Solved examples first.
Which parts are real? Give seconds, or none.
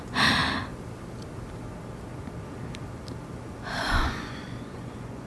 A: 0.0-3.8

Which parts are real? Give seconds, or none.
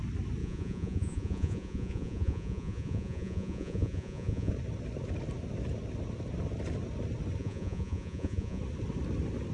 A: 0.0-0.4; 4.5-7.4; 8.6-9.5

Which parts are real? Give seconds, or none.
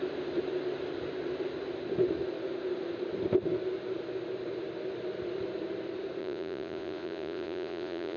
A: 0.0-6.2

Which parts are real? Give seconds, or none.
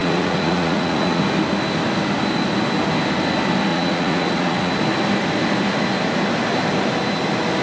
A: 1.2-3.7; 4.7-7.6